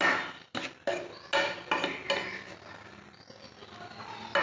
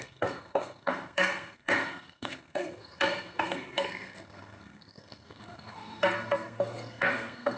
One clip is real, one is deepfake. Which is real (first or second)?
first